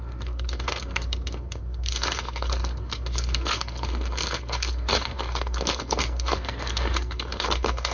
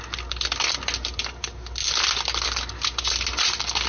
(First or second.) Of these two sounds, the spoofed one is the first